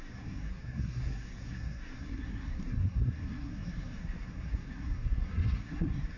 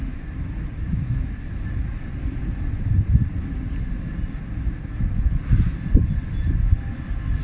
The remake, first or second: first